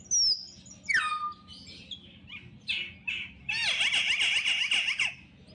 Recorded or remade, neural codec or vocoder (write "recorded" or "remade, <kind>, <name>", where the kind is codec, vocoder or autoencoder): recorded